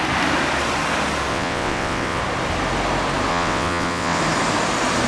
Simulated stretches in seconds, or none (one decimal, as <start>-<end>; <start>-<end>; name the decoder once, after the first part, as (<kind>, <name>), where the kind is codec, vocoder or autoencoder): 1.3-2.2 (vocoder, WaveNeXt); 3.3-4.2